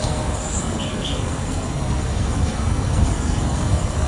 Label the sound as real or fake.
fake